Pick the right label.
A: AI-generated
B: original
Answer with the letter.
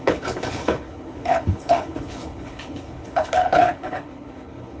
A